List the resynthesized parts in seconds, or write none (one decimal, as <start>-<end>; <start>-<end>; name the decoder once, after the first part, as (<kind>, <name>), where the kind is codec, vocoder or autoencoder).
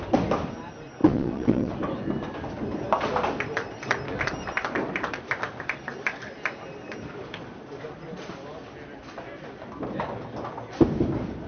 1.0-1.7 (vocoder, Vocos)